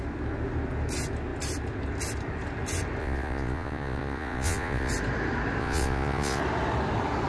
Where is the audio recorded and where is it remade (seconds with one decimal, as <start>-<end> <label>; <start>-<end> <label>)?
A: 0.0-3.0 recorded; 3.0-4.9 remade; 4.9-5.6 recorded; 5.6-6.4 remade; 6.4-7.3 recorded